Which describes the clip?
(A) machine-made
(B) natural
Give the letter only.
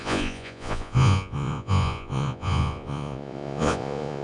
A